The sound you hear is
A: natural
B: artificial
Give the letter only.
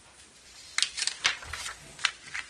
A